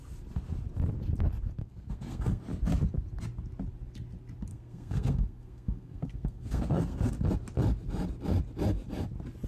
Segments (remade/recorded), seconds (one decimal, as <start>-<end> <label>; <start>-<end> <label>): 0.0-1.6 recorded; 1.6-2.4 remade; 2.4-4.5 recorded; 4.5-7.1 remade; 7.1-9.5 recorded